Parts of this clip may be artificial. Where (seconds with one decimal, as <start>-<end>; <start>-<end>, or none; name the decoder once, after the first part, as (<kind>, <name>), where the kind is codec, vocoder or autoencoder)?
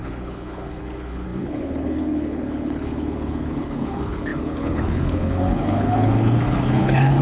0.0-7.2 (codec, HILCodec)